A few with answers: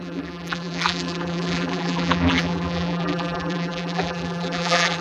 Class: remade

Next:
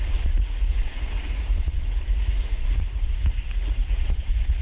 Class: remade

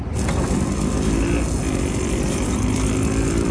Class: recorded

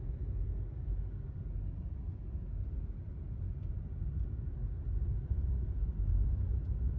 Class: recorded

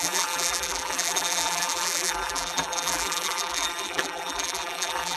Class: remade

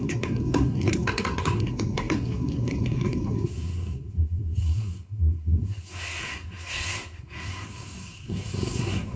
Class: remade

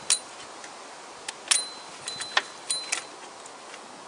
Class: recorded